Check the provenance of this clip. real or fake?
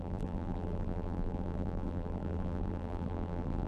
fake